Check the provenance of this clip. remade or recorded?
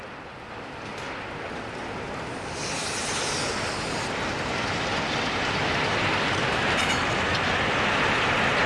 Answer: recorded